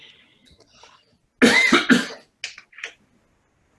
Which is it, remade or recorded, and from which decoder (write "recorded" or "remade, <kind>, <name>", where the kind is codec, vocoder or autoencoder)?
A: recorded